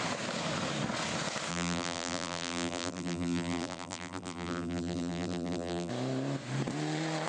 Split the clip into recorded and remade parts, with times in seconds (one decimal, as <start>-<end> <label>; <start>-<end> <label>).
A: 0.0-1.5 recorded; 1.5-5.9 remade; 5.9-7.3 recorded